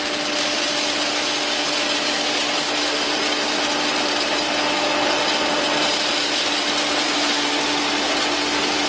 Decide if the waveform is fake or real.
real